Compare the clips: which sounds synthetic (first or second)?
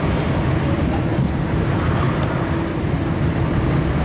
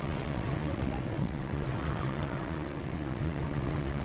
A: second